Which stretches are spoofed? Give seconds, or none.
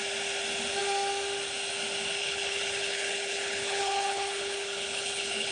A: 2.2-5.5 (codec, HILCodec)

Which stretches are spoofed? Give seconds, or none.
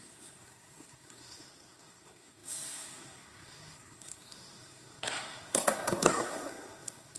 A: 0.0-7.2 (codec, SNAC)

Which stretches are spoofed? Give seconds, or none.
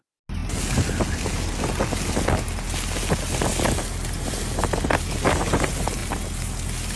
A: none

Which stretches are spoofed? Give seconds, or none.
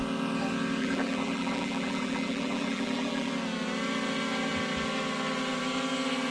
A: 0.8-3.3 (vocoder, BigVGAN v2)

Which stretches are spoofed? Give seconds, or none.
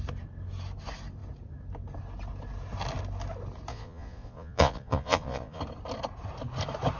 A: 3.7-5.6 (vocoder, Vocos)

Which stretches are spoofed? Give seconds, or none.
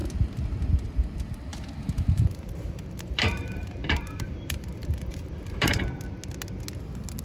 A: 1.5-5.8 (vocoder, BigVGAN v2)